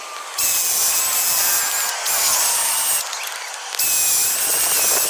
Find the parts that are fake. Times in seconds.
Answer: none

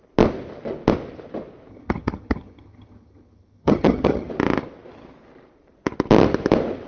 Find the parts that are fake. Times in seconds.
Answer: 1.7-4.3 (vocoder, HiFi-GAN)

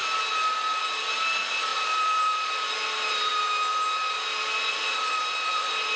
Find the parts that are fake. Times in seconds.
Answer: 0.8-3.3 (vocoder, BigVGAN v2); 4.7-6.0

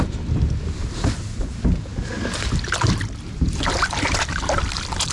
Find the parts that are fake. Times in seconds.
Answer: 1.9-4.6 (vocoder, BigVGAN v2)

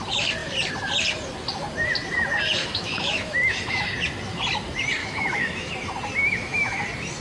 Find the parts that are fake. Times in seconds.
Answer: 2.6-3.8 (autoencoder, DAC-VAE); 5.0-5.7; 6.2-6.8

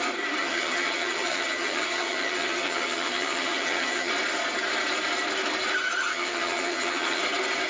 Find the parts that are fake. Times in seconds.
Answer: 0.4-4.1 (vocoder, HiFi-GAN); 6.1-7.2

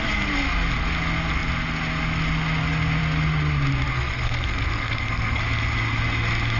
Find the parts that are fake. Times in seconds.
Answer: 3.9-5.4 (codec, SNAC)